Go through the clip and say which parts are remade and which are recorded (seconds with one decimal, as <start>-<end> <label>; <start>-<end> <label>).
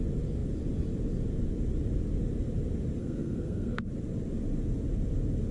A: 0.0-3.0 recorded; 3.0-3.9 remade; 3.9-5.5 recorded